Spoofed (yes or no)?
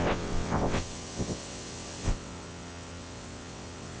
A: yes